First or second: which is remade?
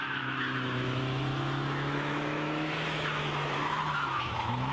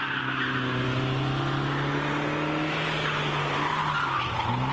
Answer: first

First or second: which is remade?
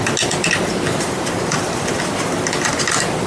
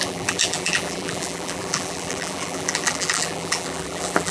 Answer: second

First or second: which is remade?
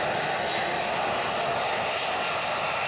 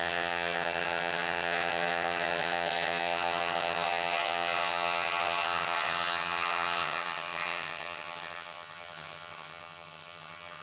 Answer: second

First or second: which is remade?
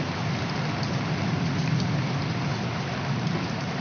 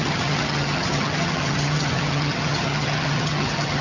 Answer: second